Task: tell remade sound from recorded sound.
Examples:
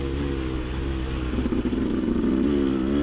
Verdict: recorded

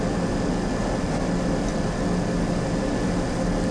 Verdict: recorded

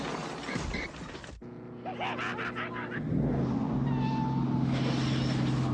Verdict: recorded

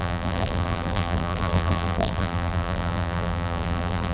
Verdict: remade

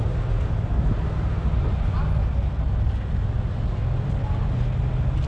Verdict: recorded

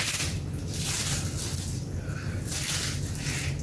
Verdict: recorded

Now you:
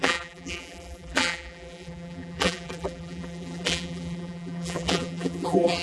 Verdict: remade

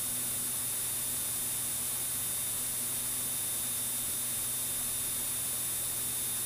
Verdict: recorded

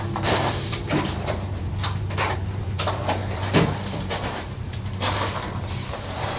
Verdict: remade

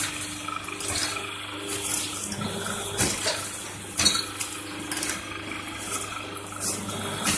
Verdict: recorded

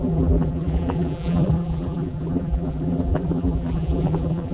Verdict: remade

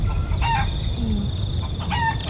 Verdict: recorded